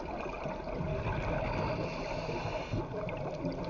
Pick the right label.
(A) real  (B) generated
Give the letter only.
A